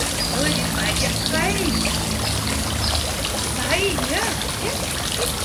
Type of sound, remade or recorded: recorded